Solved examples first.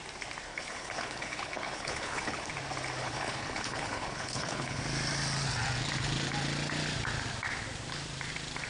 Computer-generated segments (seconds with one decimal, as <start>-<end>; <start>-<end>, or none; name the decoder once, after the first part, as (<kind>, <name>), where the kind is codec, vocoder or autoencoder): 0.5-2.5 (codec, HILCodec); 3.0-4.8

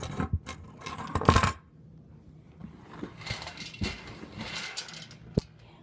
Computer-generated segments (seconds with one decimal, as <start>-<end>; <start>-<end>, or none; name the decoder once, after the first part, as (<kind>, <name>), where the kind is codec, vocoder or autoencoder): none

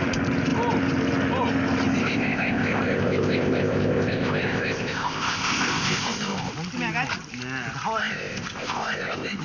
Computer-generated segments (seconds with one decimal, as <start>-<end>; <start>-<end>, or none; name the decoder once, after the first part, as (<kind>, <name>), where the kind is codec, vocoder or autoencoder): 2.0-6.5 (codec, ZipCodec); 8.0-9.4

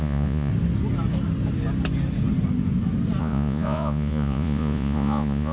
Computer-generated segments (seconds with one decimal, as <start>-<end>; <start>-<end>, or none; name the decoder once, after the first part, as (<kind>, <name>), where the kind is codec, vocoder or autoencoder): 0.0-0.5 (vocoder, Vocos); 3.2-5.5